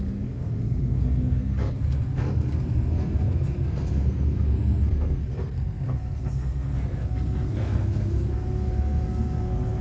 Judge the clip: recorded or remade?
remade